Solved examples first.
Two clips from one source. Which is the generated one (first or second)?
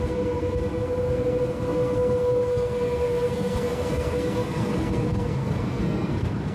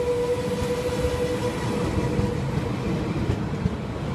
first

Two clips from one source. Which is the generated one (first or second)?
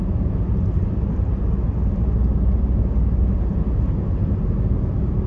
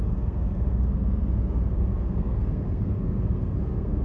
second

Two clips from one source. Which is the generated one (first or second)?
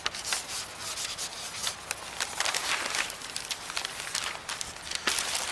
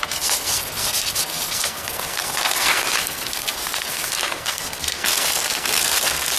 second